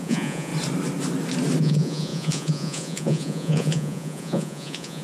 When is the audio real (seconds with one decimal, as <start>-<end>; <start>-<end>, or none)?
0.5-1.6